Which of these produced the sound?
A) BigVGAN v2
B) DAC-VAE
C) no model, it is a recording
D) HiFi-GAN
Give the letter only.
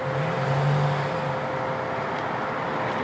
C